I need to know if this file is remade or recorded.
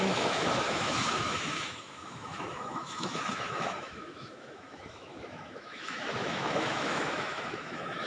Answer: remade